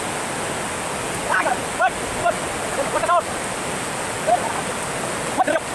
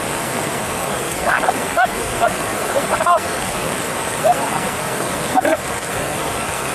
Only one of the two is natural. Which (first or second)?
first